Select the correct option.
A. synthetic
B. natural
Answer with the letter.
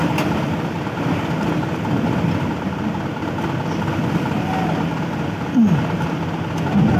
B